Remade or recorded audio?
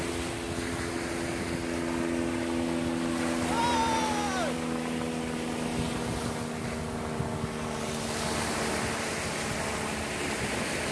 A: recorded